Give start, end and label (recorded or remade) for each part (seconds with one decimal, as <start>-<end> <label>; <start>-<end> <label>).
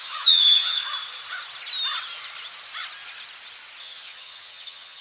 0.0-0.8 remade; 0.8-3.8 recorded; 3.8-5.0 remade